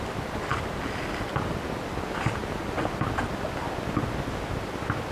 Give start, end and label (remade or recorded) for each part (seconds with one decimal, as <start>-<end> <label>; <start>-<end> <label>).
0.0-5.1 recorded